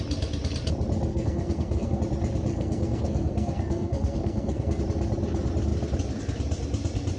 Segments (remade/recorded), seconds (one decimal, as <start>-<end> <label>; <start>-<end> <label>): 0.0-1.1 recorded; 1.1-2.0 remade; 2.0-2.5 recorded; 2.5-4.8 remade; 4.8-7.2 recorded